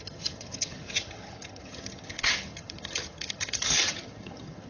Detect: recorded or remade remade